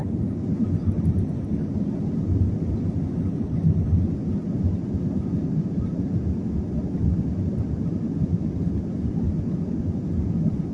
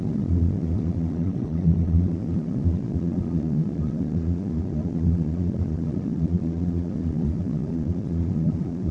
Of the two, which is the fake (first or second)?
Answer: second